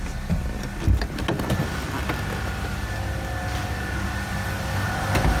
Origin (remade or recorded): recorded